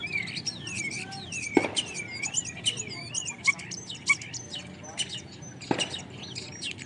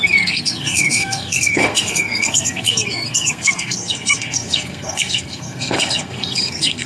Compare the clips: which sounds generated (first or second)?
second